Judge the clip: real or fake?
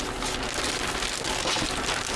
real